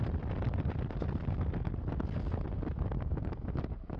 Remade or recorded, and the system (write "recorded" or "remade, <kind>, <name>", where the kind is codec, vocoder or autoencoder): recorded